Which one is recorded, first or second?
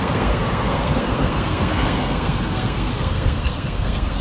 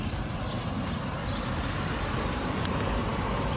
second